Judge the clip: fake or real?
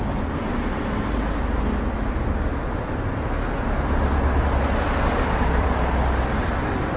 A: real